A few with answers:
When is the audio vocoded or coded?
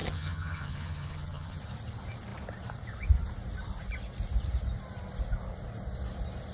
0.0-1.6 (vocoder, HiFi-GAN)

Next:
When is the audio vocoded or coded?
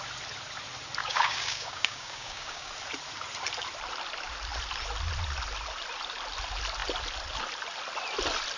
1.0-2.7 (codec, DAC)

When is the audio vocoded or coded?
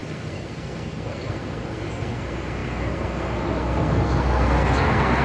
0.0-5.2 (codec, SNAC)